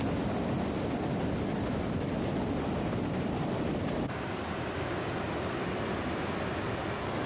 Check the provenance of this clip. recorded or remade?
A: recorded